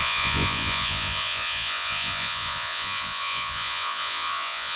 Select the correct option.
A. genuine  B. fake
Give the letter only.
B